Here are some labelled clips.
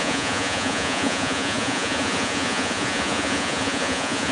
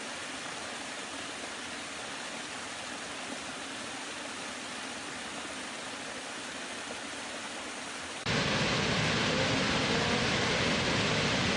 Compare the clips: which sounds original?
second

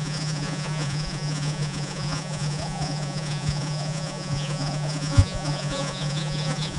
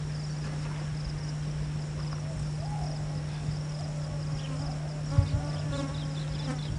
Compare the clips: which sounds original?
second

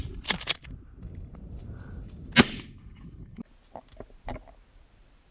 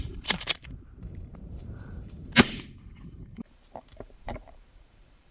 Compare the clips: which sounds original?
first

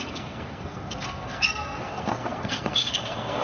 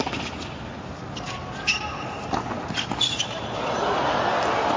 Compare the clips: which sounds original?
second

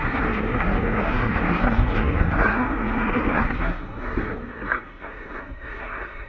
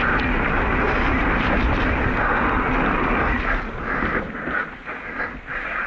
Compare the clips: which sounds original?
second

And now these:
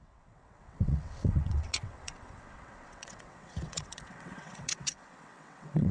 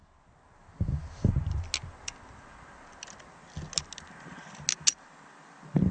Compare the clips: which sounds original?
second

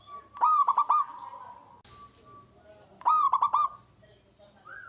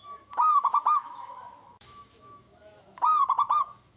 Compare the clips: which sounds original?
first